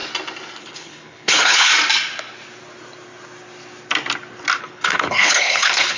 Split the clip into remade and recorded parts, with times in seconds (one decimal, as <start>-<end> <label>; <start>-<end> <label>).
0.0-0.6 recorded; 0.6-1.7 remade; 1.7-4.6 recorded; 4.6-6.0 remade